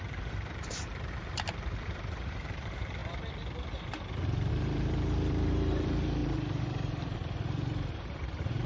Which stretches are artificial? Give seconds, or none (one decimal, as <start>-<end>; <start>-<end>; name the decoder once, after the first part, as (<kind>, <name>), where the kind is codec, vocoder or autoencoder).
0.0-3.0 (vocoder, BigVGAN v2); 4.5-8.7